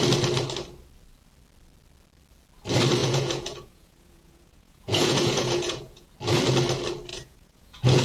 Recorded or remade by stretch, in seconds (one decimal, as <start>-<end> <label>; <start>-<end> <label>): 0.0-3.0 recorded; 3.0-6.1 remade; 6.1-7.1 recorded; 7.1-8.0 remade

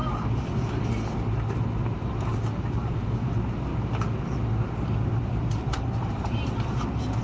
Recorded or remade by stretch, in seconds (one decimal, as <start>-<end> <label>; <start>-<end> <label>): 0.0-2.7 recorded; 2.7-3.7 remade; 3.7-5.2 recorded; 5.2-7.2 remade

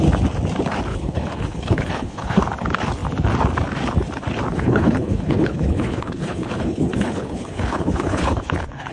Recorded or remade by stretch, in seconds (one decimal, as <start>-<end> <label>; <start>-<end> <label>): 0.0-0.9 recorded; 0.9-2.4 remade; 2.4-4.5 recorded; 4.5-8.9 remade